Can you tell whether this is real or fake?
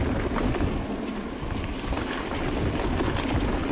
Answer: real